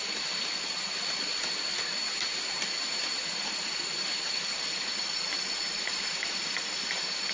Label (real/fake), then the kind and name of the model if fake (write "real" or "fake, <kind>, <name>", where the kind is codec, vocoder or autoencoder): real